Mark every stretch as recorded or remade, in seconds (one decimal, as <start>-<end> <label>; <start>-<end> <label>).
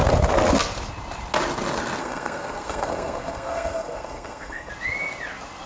0.0-2.0 recorded; 2.0-4.7 remade; 4.7-5.7 recorded